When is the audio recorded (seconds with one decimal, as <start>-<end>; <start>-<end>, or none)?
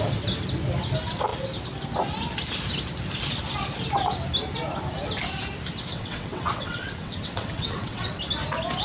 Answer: 0.0-5.9; 8.2-8.8